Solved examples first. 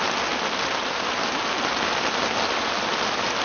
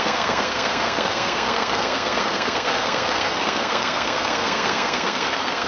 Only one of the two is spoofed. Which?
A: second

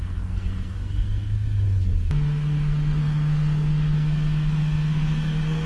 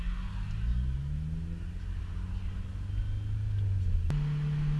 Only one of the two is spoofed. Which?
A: first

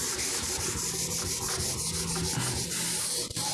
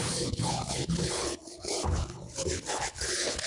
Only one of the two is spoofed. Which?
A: second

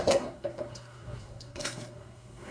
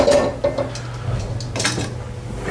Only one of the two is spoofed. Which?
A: first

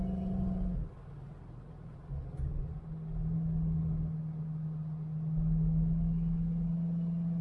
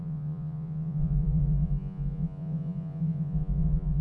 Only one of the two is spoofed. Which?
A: second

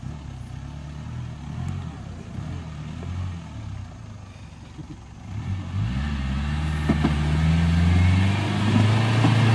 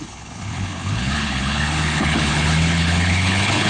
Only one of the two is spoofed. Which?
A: second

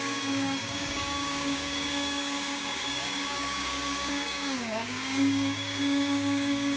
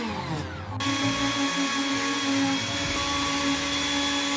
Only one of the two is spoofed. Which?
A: first